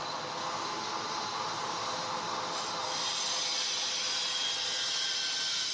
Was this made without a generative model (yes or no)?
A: yes